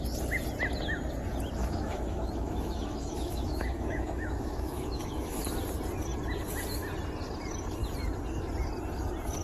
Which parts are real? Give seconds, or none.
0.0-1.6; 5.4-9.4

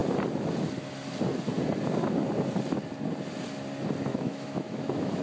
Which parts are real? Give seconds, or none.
0.0-4.1

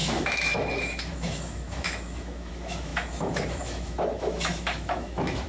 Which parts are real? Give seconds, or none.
none

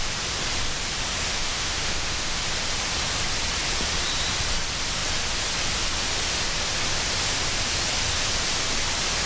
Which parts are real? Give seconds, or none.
0.0-1.3; 2.4-9.3

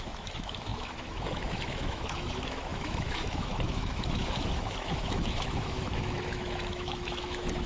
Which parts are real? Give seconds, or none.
none

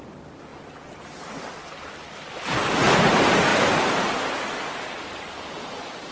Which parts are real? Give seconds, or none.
0.0-6.1